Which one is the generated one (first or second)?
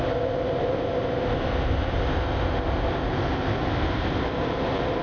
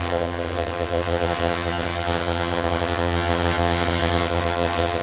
second